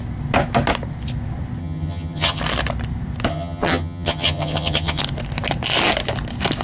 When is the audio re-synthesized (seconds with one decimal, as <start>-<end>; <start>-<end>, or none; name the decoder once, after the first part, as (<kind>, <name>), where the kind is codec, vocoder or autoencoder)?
1.6-2.4 (vocoder, HiFi-GAN); 3.3-5.0